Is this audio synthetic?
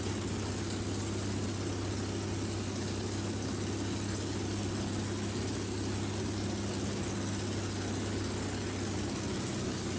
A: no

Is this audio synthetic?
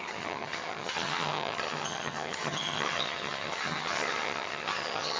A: yes